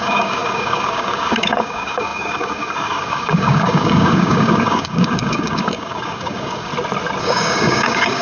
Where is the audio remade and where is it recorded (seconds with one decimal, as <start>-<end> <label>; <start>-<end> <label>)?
0.0-6.7 remade; 6.7-7.2 recorded; 7.2-8.2 remade